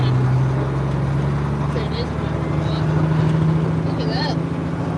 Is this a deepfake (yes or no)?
no